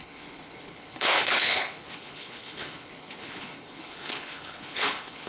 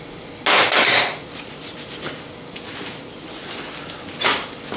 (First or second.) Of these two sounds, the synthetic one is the first